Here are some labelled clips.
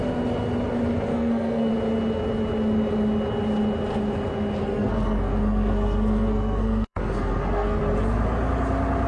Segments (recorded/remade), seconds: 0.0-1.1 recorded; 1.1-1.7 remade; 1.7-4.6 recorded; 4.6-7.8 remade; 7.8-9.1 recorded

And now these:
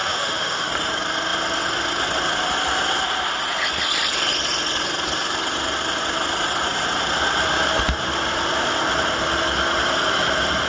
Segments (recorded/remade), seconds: 0.0-0.7 remade; 0.7-10.7 recorded

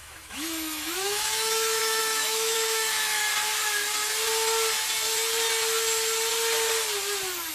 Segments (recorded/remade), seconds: 0.0-3.2 remade; 3.2-7.5 recorded

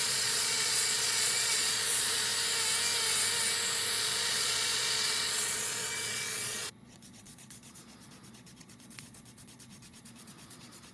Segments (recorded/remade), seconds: 0.0-2.3 remade; 2.3-4.0 recorded; 4.0-10.9 remade